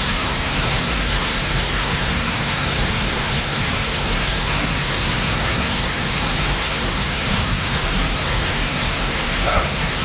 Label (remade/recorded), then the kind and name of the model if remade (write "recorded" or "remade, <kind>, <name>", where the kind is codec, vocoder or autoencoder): remade, codec, SNAC